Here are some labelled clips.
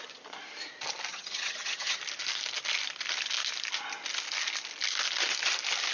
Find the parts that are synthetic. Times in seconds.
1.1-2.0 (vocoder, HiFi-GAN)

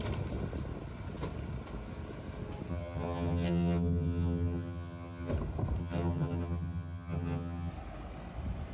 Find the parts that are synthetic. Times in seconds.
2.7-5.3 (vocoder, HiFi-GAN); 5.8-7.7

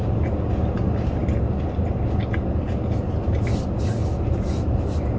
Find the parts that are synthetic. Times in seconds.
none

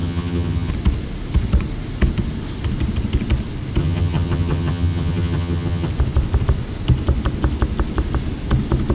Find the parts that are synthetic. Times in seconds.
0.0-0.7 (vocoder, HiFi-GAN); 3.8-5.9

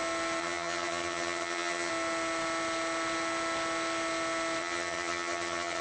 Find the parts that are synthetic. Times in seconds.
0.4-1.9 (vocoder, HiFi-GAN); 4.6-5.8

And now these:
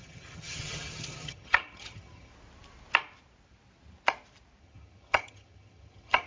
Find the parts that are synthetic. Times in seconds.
0.0-2.3 (vocoder, HiFi-GAN); 4.6-6.3

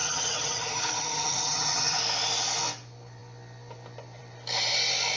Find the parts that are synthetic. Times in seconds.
0.0-2.0 (vocoder, HiFi-GAN)